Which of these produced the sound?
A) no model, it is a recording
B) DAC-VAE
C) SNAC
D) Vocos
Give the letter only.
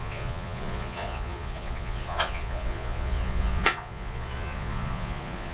D